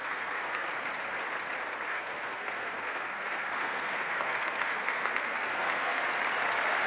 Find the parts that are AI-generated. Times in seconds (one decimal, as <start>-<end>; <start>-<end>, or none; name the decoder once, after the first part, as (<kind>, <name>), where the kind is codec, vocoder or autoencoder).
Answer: 0.0-0.7 (codec, SNAC); 1.9-6.0